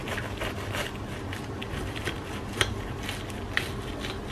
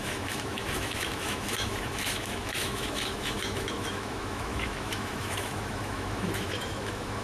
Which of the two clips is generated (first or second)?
second